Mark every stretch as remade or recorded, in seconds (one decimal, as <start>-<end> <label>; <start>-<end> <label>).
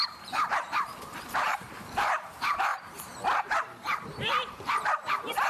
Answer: 0.0-5.5 remade